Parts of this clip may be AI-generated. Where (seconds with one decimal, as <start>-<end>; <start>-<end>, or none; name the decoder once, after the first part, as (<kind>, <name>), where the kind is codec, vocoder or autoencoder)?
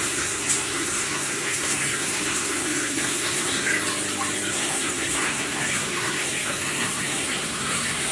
0.0-3.7 (codec, SNAC); 4.5-8.1